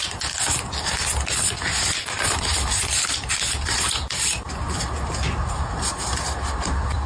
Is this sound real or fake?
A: fake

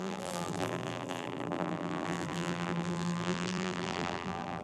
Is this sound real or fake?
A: fake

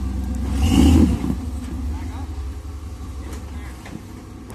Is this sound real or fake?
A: real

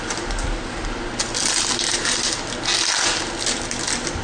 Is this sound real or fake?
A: real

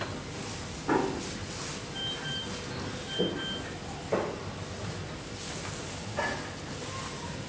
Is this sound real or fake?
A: real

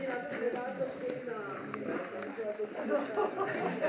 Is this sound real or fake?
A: real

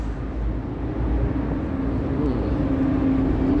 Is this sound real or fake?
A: real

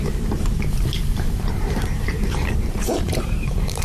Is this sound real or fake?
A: fake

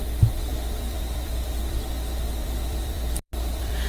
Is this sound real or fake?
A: fake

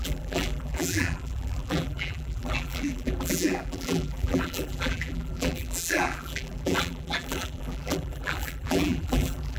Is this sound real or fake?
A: fake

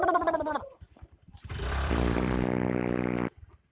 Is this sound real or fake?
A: fake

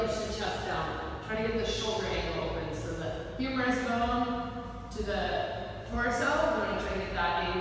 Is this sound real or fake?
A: real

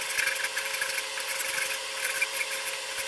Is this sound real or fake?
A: real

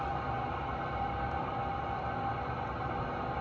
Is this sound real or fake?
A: real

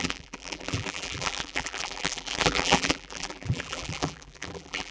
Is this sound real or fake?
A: fake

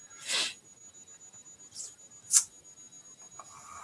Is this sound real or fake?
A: real